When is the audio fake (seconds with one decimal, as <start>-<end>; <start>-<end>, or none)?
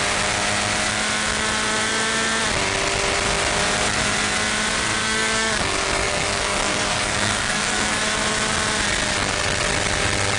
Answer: 5.0-8.0